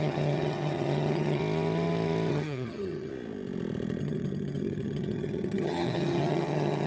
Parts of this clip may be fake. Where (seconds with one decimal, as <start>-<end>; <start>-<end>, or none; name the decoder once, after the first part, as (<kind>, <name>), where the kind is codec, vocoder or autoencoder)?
0.0-1.4 (vocoder, HiFi-GAN); 2.3-3.1; 4.0-6.9